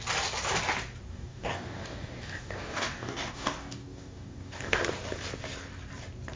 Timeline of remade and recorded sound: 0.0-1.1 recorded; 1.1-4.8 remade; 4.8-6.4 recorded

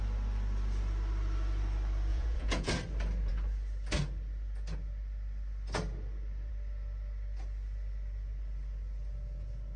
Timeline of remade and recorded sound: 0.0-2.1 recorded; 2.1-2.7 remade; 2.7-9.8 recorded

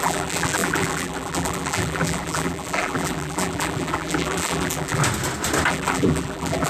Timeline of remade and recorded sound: 0.0-5.0 remade; 5.0-5.7 recorded; 5.7-6.7 remade